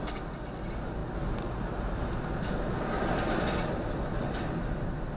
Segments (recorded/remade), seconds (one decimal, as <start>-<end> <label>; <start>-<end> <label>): 0.0-5.2 recorded